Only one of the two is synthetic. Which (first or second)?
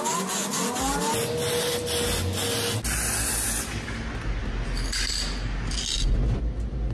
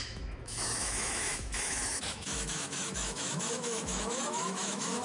second